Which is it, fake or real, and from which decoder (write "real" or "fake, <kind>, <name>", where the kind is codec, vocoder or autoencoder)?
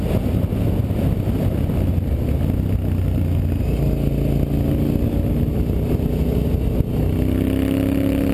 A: real